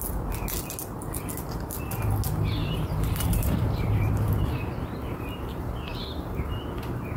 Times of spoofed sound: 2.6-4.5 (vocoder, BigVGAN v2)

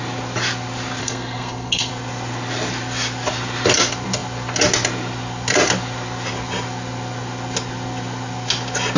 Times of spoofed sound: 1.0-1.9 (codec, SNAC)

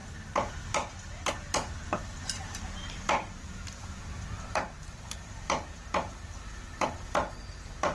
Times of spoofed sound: 1.3-7.9 (vocoder, BigVGAN v2)